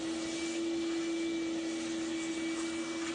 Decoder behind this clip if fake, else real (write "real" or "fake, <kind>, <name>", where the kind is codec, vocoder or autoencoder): real